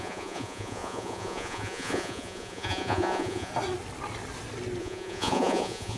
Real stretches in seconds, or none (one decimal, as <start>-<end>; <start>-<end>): 3.5-4.8

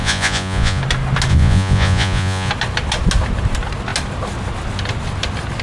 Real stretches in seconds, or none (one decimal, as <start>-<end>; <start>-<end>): 0.8-1.3; 2.5-5.6

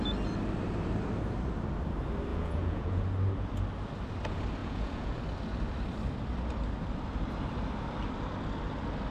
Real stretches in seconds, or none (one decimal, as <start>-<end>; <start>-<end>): 0.0-2.3; 3.0-4.6; 5.2-9.1